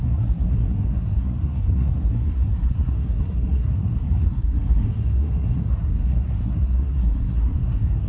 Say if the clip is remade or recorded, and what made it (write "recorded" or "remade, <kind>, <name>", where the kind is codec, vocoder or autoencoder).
remade, codec, SNAC